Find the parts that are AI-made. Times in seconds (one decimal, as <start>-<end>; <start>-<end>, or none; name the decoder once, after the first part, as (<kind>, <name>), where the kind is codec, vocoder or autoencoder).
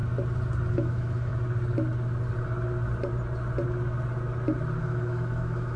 0.7-1.3 (autoencoder, DAC-VAE); 4.8-5.8